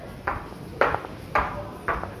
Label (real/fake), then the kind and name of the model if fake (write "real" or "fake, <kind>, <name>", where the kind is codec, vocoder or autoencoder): fake, vocoder, BigVGAN v2